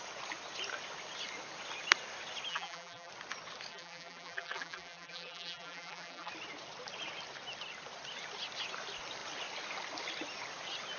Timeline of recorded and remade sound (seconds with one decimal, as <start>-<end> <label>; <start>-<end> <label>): 0.0-2.5 recorded; 2.5-3.1 remade; 3.1-3.7 recorded; 3.7-6.3 remade; 6.3-11.0 recorded